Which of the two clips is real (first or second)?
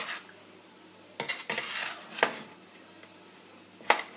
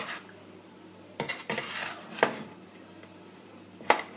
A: first